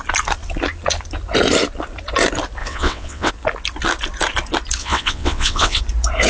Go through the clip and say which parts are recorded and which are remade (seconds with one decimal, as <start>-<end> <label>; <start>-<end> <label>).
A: 0.0-2.6 recorded; 2.6-3.3 remade; 3.3-4.8 recorded; 4.8-5.8 remade; 5.8-6.3 recorded

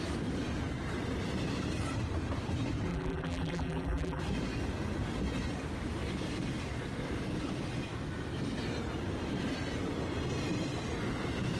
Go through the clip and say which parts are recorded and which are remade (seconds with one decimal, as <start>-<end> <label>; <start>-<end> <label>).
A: 0.0-2.9 recorded; 2.9-4.2 remade; 4.2-11.6 recorded

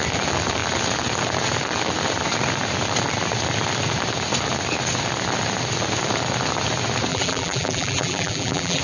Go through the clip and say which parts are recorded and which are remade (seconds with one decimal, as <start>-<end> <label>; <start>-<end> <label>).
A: 0.0-7.1 recorded; 7.1-8.8 remade

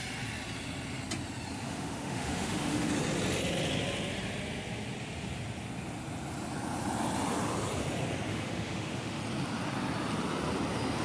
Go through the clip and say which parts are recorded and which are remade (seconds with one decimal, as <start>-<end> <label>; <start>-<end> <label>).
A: 0.0-1.6 recorded; 1.6-2.9 remade; 2.9-8.3 recorded; 8.3-9.2 remade; 9.2-11.0 recorded

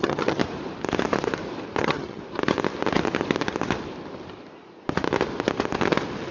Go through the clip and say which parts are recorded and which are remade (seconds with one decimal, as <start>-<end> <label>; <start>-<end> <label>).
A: 0.0-0.4 remade; 0.4-1.8 recorded; 1.8-2.2 remade; 2.2-6.3 recorded